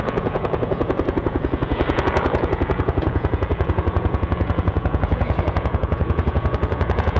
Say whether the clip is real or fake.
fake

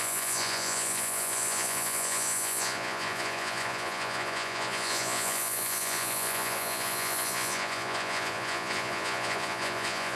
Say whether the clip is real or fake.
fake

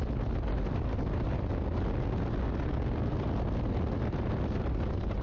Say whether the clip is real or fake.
real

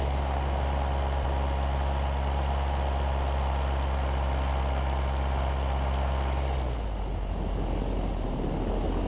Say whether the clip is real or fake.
real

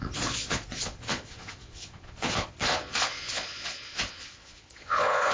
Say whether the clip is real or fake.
fake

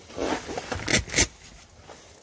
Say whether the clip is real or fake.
real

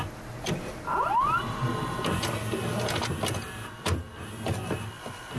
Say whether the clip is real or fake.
real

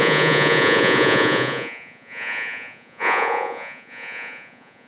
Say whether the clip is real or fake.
fake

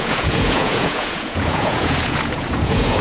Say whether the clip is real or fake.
fake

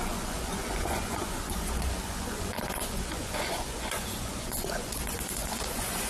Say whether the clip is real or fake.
fake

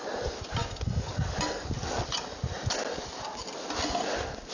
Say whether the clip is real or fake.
real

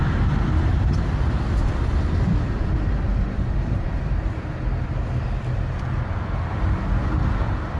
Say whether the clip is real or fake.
real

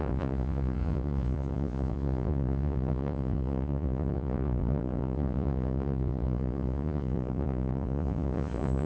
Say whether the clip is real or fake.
fake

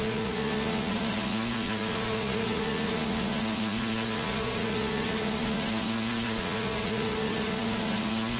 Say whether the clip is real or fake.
fake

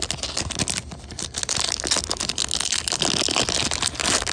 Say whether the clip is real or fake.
real